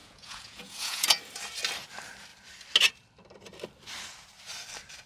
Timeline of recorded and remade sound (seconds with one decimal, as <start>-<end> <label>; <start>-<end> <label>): 0.0-1.2 remade; 1.2-5.1 recorded